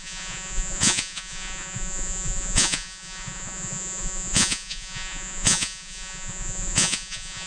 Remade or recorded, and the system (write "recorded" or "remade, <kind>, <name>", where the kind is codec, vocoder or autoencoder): remade, vocoder, Vocos